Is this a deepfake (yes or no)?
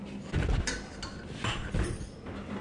no